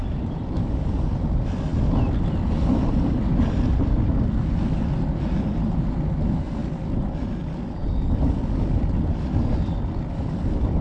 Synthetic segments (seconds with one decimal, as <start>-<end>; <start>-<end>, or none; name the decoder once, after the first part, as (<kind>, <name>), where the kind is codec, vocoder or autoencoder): none